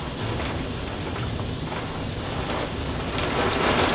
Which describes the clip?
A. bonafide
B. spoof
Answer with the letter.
A